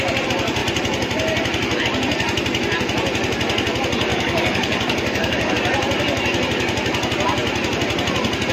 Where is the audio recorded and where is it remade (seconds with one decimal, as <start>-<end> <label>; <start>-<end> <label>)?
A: 0.0-4.1 recorded; 4.1-5.5 remade; 5.5-8.5 recorded

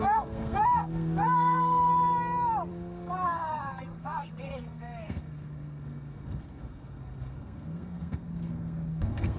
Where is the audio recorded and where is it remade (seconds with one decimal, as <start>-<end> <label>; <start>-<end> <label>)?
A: 0.0-1.9 remade; 1.9-2.7 recorded; 2.7-9.4 remade